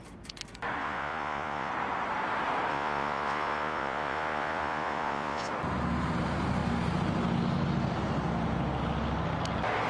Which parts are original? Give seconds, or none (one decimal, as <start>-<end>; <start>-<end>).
0.0-0.8; 1.7-2.7; 5.5-9.9